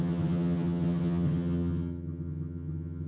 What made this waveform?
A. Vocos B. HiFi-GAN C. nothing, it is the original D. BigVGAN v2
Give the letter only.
B